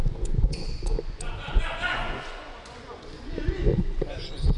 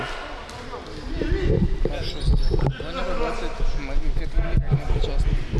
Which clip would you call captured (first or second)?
second